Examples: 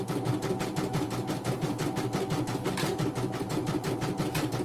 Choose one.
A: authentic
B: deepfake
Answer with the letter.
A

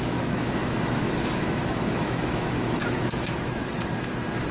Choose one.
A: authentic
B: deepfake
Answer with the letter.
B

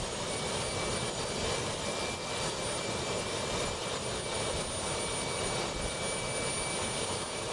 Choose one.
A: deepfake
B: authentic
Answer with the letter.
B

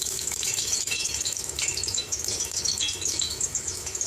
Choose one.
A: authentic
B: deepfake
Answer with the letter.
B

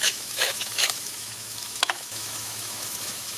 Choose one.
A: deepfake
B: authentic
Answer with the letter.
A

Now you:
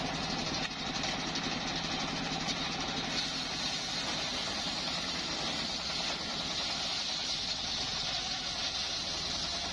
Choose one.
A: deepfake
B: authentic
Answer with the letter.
B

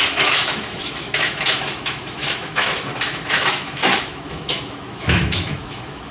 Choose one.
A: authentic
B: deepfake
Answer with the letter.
B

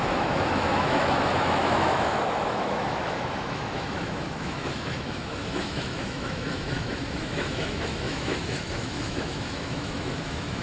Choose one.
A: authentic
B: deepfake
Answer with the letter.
B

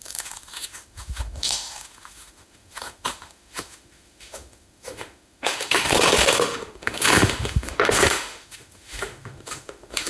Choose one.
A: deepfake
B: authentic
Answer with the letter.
A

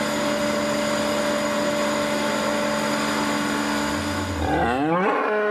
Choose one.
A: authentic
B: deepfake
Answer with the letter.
A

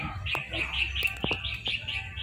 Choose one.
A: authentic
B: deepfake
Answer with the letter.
A